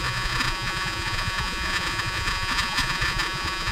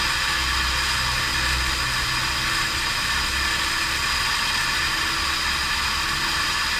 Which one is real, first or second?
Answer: second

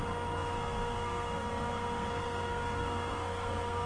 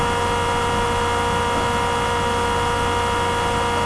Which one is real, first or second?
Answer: second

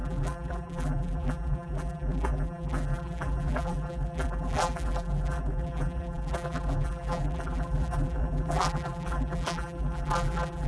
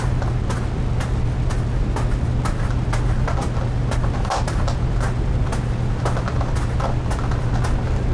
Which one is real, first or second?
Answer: second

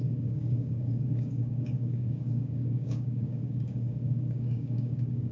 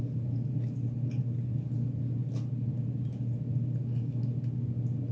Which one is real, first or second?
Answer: second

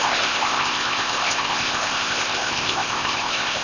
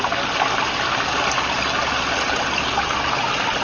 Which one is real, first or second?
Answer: second